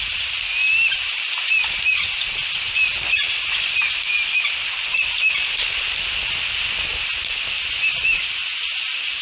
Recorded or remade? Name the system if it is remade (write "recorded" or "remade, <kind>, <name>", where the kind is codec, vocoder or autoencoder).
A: recorded